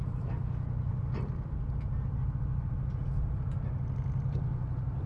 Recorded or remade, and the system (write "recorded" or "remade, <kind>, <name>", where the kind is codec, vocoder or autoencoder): recorded